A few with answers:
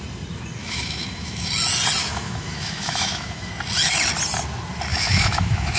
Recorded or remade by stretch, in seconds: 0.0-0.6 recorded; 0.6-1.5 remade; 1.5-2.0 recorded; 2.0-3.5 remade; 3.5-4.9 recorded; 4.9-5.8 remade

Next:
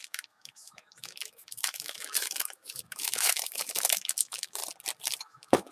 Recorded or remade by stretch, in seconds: 0.0-4.6 remade; 4.6-5.2 recorded; 5.2-5.7 remade

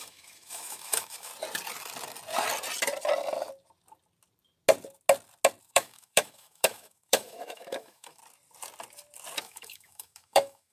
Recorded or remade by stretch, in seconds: 0.0-1.3 remade; 1.3-5.6 recorded; 5.6-8.2 remade; 8.2-9.4 recorded; 9.4-10.7 remade

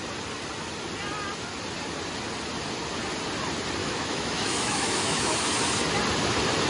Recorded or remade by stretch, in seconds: 0.0-3.8 recorded; 3.8-5.5 remade; 5.5-6.7 recorded

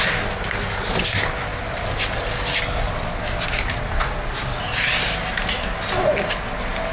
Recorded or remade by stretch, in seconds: 0.0-6.9 recorded

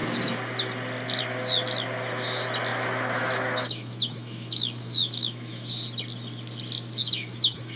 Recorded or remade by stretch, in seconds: 0.0-2.7 recorded; 2.7-5.7 remade; 5.7-7.0 recorded; 7.0-7.8 remade

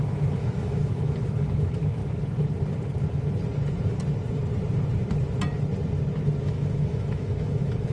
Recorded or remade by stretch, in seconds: 0.0-2.0 remade; 2.0-6.4 recorded; 6.4-7.9 remade

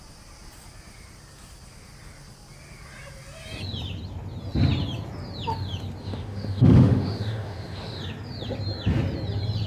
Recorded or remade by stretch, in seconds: 0.0-6.0 recorded; 6.0-8.0 remade; 8.0-9.7 recorded